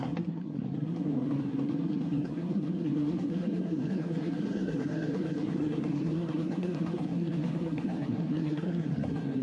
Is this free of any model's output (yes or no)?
no